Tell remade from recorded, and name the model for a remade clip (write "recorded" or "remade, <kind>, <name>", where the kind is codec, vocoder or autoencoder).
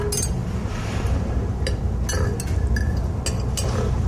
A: recorded